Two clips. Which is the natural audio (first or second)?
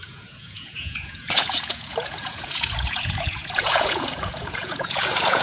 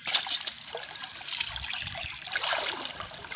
second